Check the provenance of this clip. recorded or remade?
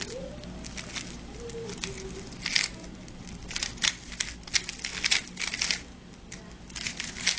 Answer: recorded